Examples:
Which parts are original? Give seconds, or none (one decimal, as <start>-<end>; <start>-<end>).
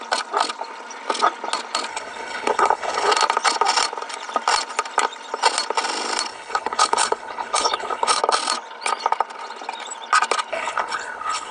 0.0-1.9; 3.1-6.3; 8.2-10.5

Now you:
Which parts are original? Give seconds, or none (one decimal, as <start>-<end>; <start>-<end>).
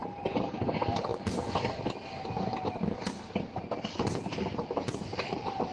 0.0-5.7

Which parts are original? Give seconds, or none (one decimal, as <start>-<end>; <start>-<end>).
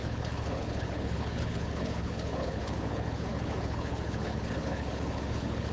none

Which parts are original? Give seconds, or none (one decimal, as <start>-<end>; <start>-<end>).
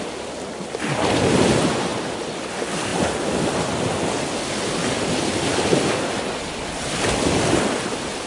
0.0-8.3